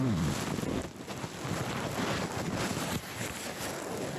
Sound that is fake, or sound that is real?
real